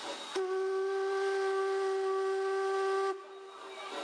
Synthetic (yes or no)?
no